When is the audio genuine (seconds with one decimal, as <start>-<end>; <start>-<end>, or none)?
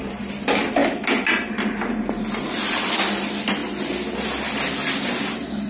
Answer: 0.0-5.7